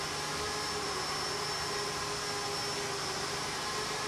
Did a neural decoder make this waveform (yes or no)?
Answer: no